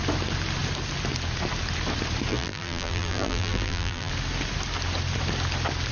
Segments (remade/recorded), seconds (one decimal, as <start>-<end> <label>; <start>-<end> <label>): 0.0-2.3 recorded; 2.3-4.1 remade; 4.1-5.9 recorded